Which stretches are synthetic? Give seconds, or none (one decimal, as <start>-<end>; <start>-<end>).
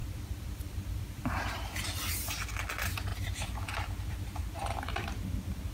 0.0-1.4; 3.1-5.7